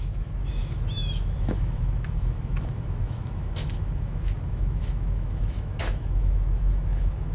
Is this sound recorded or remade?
remade